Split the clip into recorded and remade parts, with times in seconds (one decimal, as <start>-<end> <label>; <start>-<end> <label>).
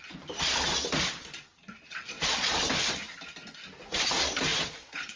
0.0-1.8 recorded; 1.8-2.6 remade; 2.6-4.5 recorded; 4.5-5.2 remade